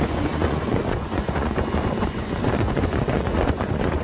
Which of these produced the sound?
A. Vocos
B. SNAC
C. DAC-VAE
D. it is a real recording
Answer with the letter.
A